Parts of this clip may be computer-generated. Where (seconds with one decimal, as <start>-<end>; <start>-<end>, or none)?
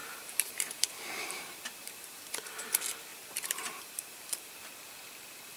0.0-2.2; 3.1-4.5